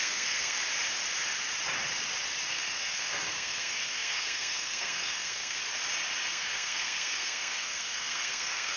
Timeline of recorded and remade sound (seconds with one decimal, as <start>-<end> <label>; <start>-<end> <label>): 0.0-0.6 remade; 0.6-2.5 recorded; 2.5-5.6 remade; 5.6-6.3 recorded; 6.3-8.8 remade